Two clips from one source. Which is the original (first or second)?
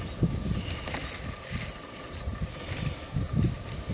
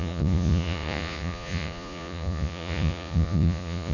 first